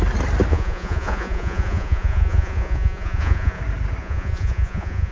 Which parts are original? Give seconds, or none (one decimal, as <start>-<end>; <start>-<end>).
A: 0.0-0.5; 3.6-4.0